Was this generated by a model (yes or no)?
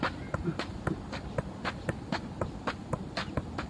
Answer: no